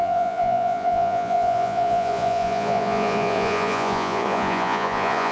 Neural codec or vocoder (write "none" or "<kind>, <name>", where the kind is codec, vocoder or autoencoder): vocoder, Vocos